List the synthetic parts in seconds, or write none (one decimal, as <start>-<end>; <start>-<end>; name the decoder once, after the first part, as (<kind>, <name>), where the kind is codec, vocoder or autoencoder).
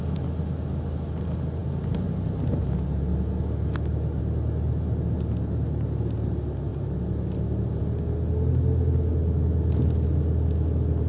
none